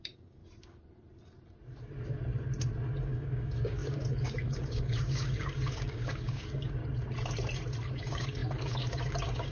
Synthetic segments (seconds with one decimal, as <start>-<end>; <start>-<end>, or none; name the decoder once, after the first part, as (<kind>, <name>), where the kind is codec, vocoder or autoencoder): 0.0-0.4 (codec, DAC); 3.0-6.8; 7.9-9.5

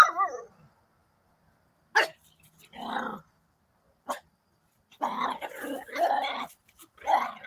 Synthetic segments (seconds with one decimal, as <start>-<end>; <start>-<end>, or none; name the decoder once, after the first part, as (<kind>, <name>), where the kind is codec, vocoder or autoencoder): none

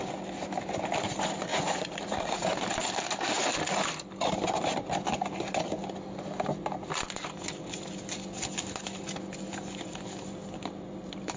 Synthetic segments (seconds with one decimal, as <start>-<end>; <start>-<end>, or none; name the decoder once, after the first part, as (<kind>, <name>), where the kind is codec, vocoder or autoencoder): 1.5-2.5 (vocoder, Vocos)

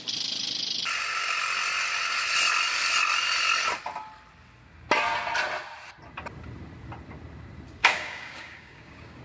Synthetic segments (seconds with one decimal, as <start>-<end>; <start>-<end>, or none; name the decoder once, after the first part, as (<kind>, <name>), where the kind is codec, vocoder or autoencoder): 7.8-9.2 (codec, DAC)